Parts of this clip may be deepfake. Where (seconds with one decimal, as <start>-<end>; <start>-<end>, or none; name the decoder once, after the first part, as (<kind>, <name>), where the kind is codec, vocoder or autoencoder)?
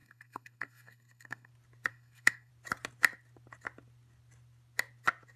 0.0-1.5 (codec, SNAC); 1.9-2.5